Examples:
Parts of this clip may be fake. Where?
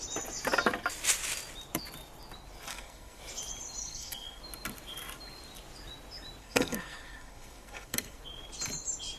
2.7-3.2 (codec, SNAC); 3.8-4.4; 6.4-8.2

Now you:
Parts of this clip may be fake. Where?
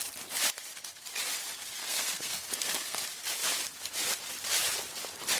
1.8-3.0 (codec, SNAC)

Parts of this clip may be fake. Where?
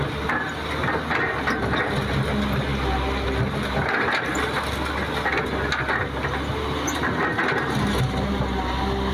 none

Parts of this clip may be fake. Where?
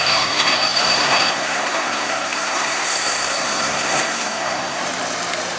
0.0-4.8 (codec, SNAC)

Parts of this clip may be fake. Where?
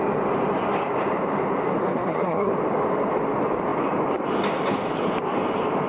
1.8-2.5 (codec, SNAC)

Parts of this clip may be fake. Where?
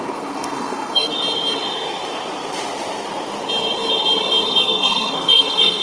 0.0-1.1 (codec, SNAC); 4.6-5.8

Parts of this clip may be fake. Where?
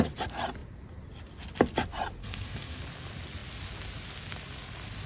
2.2-2.8 (codec, SNAC)